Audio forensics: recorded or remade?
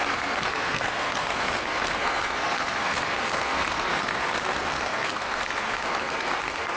remade